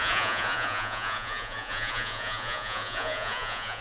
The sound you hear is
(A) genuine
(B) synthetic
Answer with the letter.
B